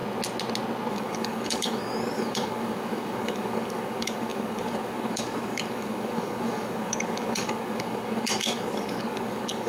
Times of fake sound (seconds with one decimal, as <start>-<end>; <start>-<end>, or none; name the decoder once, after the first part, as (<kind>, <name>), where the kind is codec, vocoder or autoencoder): 0.9-9.7 (codec, DAC)